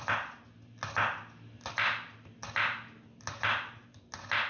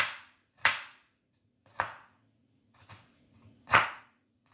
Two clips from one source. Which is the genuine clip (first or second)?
first